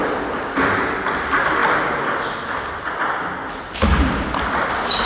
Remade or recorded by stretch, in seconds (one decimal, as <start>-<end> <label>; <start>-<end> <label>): 0.0-5.1 recorded